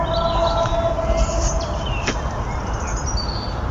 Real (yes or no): yes